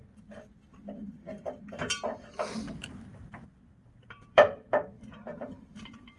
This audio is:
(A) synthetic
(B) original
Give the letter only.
A